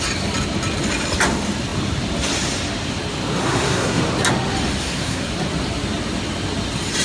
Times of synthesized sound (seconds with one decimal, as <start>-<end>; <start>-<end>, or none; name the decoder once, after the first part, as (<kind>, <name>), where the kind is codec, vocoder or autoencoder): 3.4-4.0 (codec, SNAC); 4.8-5.3